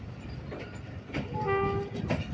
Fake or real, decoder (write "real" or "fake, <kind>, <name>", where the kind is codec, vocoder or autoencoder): real